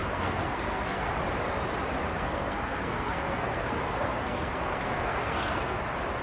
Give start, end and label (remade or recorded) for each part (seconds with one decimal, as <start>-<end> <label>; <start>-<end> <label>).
0.0-1.1 remade; 1.1-2.1 recorded; 2.1-5.8 remade; 5.8-6.2 recorded